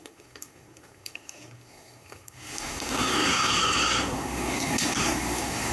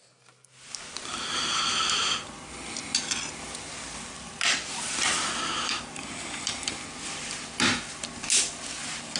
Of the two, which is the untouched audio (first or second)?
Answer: second